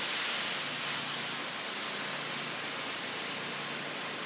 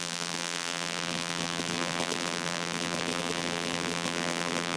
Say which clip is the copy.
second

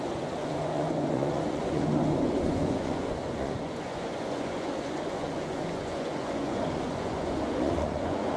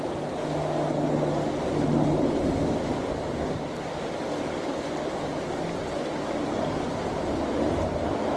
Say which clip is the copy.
first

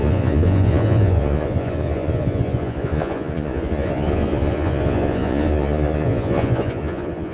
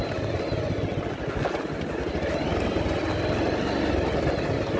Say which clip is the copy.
first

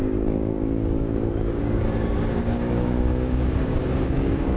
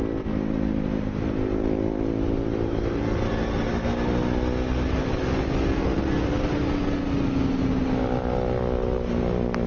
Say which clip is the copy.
first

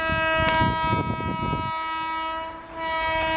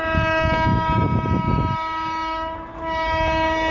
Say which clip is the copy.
second